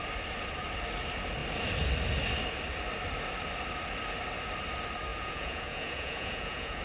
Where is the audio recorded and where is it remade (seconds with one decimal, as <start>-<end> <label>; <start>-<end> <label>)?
0.0-5.1 recorded; 5.1-6.8 remade